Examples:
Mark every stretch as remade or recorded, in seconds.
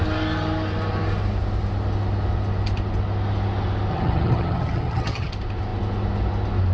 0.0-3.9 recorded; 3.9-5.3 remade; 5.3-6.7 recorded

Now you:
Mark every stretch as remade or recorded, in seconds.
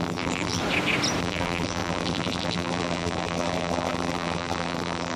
0.0-0.6 remade; 0.6-1.2 recorded; 1.2-5.2 remade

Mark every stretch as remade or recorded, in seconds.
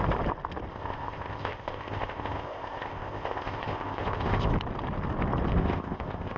0.0-0.7 recorded; 0.7-4.5 remade; 4.5-5.5 recorded; 5.5-6.4 remade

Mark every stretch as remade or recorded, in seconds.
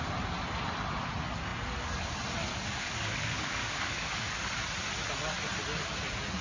0.0-2.5 recorded; 2.5-4.5 remade; 4.5-6.4 recorded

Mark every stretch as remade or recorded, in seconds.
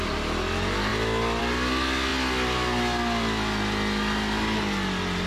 0.0-5.3 recorded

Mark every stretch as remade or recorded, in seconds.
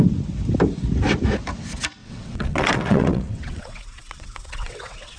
0.0-2.0 recorded; 2.0-5.2 remade